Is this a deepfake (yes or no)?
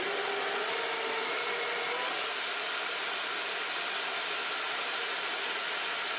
no